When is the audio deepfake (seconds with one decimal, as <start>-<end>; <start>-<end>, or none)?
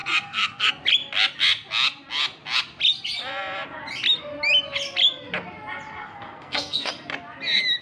0.0-0.7; 6.0-6.9